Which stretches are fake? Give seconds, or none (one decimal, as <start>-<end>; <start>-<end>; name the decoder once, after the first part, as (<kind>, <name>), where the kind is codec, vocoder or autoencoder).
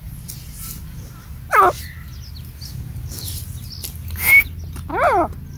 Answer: none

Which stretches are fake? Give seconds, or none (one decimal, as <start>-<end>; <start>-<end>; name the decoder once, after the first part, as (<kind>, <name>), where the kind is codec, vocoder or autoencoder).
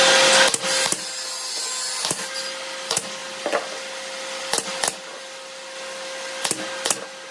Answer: none